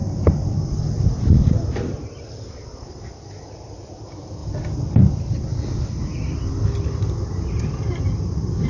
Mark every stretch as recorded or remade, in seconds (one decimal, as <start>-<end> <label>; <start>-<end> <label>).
0.0-8.7 recorded